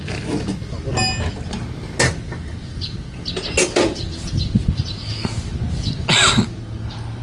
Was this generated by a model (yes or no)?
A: no